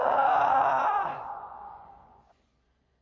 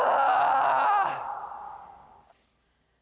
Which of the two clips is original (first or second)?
second